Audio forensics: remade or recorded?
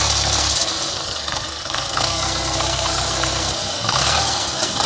remade